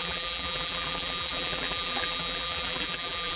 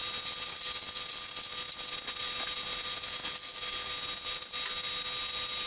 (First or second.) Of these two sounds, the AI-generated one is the first